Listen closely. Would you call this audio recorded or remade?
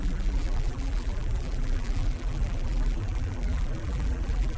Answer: remade